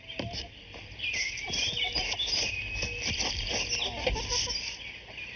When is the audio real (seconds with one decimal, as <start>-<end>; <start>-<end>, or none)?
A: 0.0-5.4

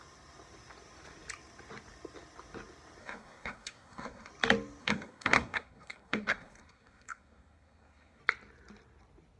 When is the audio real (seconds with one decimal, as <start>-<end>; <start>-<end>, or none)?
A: 0.0-3.0; 4.3-4.8; 8.2-9.4

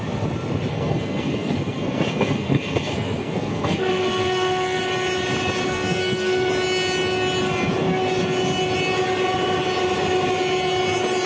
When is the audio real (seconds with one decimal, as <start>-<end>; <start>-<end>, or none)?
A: 0.0-0.7; 4.8-5.6; 6.5-11.3

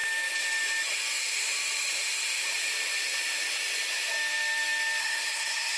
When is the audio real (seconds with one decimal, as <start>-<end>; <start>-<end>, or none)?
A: 0.0-5.0

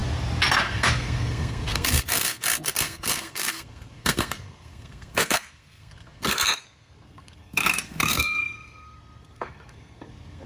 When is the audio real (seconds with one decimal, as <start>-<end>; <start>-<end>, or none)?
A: 0.0-0.6